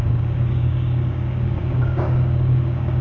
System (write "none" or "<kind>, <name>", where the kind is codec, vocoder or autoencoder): codec, DAC